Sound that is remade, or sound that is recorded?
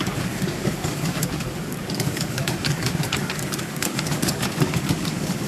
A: remade